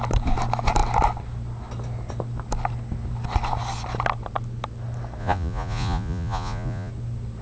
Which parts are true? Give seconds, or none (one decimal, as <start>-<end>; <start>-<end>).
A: 0.0-5.2; 6.9-7.4